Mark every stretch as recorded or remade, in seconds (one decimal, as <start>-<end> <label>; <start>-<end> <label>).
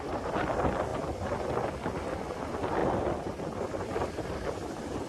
0.0-5.1 recorded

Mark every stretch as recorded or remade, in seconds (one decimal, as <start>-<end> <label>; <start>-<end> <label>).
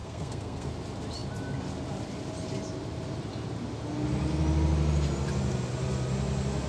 0.0-0.7 remade; 0.7-6.7 recorded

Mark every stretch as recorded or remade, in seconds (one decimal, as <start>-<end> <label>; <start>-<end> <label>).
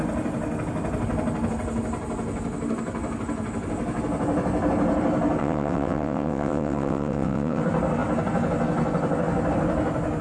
0.0-5.4 recorded; 5.4-7.6 remade; 7.6-10.2 recorded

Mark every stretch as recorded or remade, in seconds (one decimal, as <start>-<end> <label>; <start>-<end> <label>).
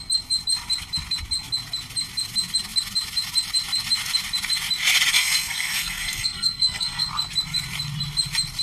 0.0-5.1 recorded; 5.1-7.1 remade; 7.1-8.6 recorded